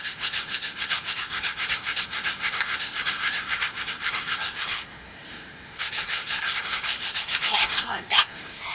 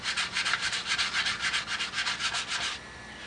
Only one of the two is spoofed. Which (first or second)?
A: first